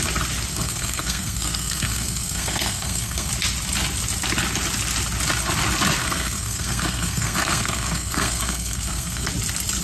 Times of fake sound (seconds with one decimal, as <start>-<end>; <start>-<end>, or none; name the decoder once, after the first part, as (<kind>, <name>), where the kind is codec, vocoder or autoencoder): 0.5-3.3 (codec, SNAC); 6.0-9.3

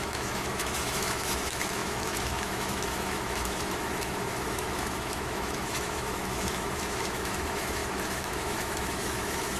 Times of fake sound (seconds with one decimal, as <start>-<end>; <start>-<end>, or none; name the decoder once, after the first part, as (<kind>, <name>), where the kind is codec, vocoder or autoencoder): 0.0-9.6 (autoencoder, DAC-VAE)

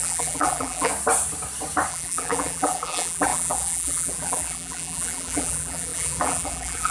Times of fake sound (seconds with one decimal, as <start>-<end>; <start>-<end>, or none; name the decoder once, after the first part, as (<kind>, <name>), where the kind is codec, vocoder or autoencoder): 0.0-0.9 (vocoder, BigVGAN v2); 1.9-6.9